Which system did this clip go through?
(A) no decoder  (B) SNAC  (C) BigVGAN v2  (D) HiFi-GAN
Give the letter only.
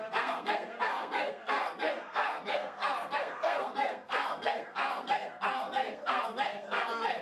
B